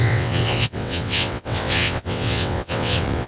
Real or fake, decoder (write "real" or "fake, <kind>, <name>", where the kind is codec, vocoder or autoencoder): fake, vocoder, WaveNeXt